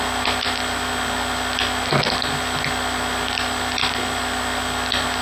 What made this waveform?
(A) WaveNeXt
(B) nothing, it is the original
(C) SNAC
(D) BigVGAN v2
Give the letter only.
B